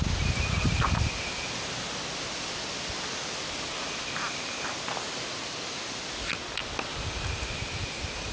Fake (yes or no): no